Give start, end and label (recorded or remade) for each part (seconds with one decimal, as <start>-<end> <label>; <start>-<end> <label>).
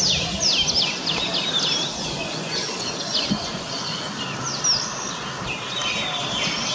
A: 0.0-1.9 recorded; 1.9-4.2 remade; 4.2-6.7 recorded